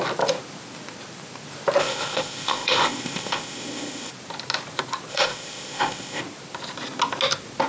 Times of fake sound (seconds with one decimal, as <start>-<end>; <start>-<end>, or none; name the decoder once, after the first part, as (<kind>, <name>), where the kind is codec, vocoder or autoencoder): 1.8-4.1 (codec, ZipCodec); 5.1-6.2